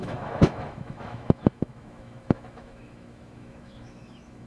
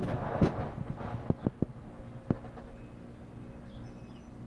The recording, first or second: second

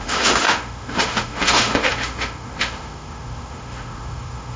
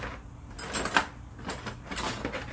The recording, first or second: second